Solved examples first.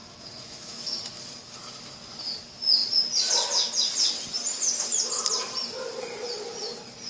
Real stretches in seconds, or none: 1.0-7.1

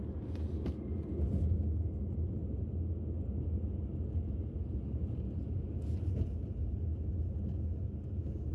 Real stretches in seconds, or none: 0.0-8.5

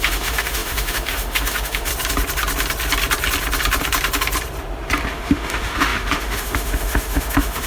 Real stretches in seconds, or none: 1.9-5.1